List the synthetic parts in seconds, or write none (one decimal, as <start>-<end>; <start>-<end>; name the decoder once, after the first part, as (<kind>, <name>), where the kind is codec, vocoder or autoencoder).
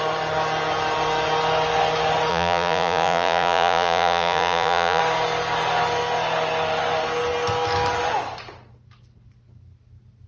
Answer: 2.3-5.0 (vocoder, Vocos)